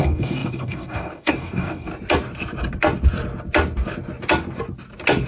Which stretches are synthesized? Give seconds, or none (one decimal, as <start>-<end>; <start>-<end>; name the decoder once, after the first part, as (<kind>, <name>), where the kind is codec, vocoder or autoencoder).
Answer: 0.0-1.9 (codec, DAC)